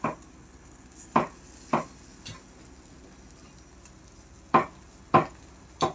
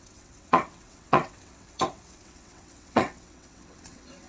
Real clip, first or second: first